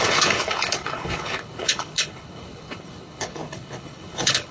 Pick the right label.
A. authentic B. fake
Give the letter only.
B